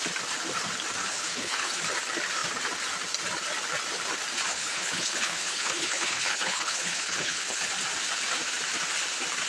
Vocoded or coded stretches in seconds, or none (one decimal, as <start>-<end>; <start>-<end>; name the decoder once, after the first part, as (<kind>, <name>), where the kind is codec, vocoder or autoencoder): 1.0-1.7 (codec, HILCodec); 4.5-7.7